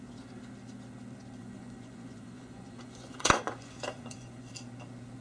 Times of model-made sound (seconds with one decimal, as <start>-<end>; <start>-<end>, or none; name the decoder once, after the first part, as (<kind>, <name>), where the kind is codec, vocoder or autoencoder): 1.4-4.5 (vocoder, Vocos)